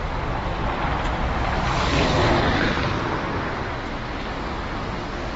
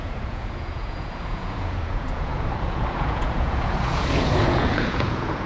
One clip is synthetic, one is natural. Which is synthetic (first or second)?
second